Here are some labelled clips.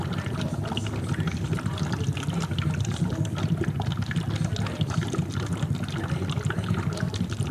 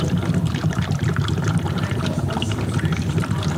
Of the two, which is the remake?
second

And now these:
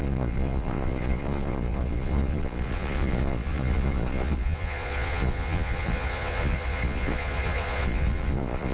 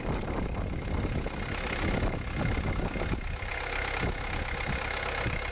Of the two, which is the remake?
first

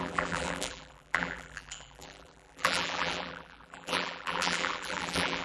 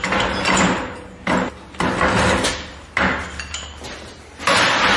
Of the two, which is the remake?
first